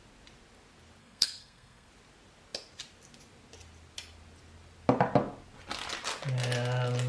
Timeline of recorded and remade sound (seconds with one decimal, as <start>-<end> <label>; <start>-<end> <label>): 0.0-1.0 recorded; 1.0-1.9 remade; 1.9-7.1 recorded